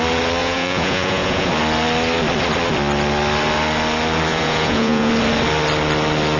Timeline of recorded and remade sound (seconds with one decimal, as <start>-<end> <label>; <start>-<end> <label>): 0.0-0.4 recorded; 0.4-1.5 remade; 1.5-4.3 recorded; 4.3-5.1 remade; 5.1-6.4 recorded